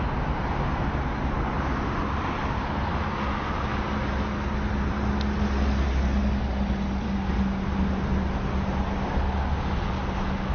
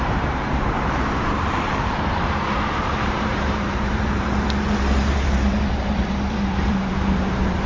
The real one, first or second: first